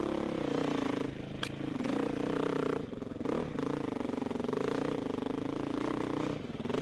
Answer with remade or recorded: recorded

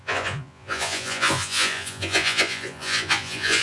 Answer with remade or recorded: remade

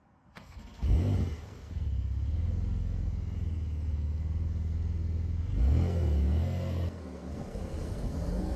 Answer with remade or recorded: remade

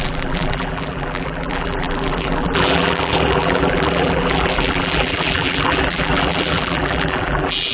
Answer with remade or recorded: remade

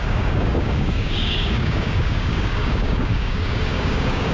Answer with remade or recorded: remade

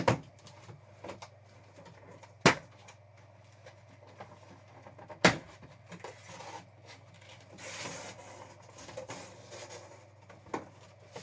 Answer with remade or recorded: recorded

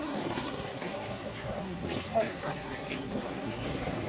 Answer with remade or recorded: remade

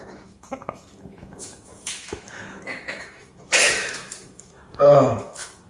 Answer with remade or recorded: remade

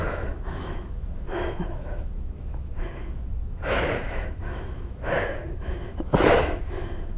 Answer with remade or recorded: remade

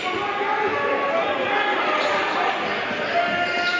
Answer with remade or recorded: recorded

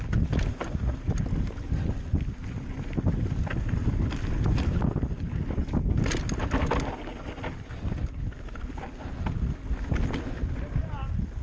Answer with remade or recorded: recorded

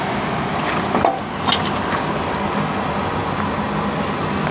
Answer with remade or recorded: recorded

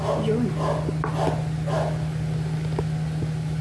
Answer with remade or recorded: recorded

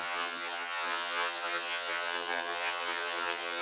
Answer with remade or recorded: remade